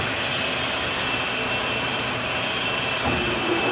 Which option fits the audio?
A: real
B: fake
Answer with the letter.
A